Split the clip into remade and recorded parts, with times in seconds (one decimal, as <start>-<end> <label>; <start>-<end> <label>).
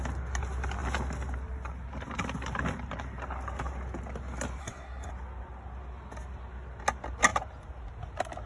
0.0-4.6 recorded; 4.6-5.1 remade; 5.1-8.5 recorded